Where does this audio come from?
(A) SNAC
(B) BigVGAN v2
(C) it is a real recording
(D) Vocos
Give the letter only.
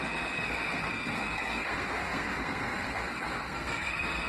A